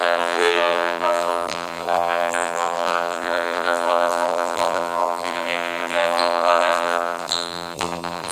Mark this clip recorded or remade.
remade